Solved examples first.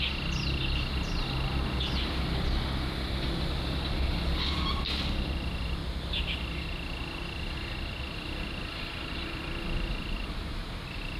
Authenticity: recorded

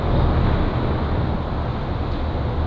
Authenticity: recorded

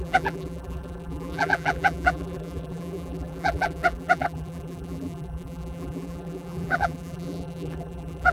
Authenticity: remade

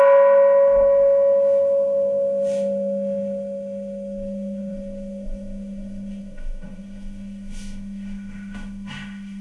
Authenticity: remade